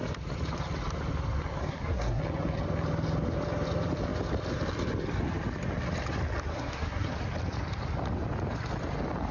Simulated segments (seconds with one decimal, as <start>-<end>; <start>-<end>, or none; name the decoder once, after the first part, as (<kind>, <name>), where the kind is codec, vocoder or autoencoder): 1.6-2.2 (codec, SNAC); 6.5-7.1